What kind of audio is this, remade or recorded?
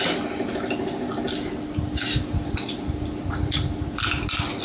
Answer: recorded